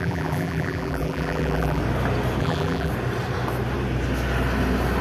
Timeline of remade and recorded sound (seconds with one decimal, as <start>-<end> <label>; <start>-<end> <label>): 0.0-1.8 remade; 1.8-2.4 recorded; 2.4-2.9 remade; 2.9-5.0 recorded